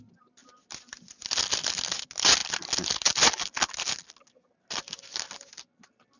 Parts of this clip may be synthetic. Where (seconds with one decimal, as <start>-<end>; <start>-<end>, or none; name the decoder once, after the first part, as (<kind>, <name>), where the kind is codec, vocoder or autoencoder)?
none